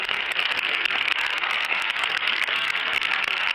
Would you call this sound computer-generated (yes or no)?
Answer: yes